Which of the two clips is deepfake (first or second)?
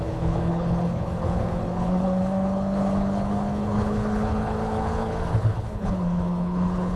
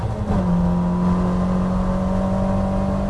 first